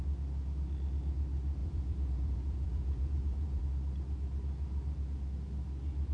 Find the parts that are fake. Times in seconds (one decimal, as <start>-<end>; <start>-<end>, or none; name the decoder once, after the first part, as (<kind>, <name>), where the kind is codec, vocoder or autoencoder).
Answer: 1.6-3.6 (vocoder, Vocos)